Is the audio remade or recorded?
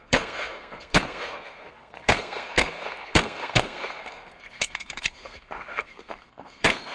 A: remade